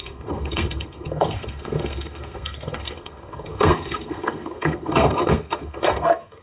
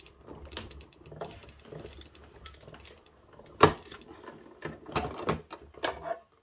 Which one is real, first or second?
second